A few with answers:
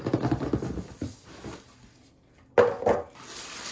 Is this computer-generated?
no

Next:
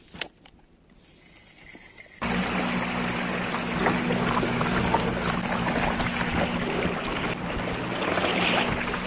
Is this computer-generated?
no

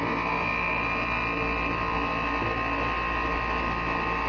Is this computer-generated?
no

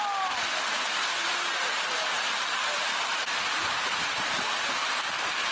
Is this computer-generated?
no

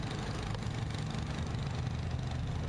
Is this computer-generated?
no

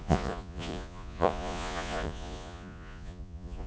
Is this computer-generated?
yes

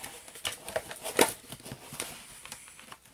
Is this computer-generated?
no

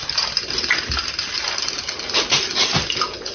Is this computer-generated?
no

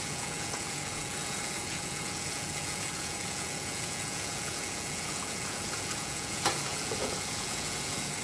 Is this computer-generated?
yes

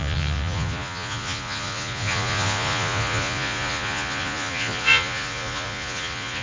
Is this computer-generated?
yes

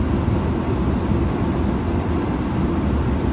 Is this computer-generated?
no